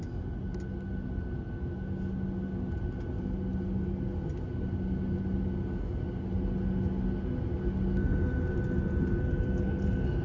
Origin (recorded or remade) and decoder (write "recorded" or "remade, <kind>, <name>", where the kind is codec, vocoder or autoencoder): recorded